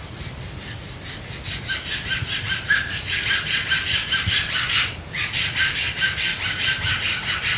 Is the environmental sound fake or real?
real